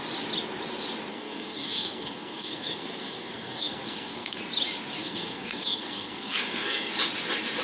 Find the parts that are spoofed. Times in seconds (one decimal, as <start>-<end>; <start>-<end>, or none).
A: 1.1-4.4; 5.0-6.9